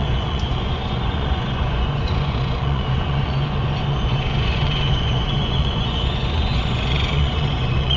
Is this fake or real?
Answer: fake